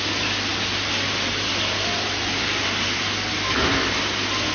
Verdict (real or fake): real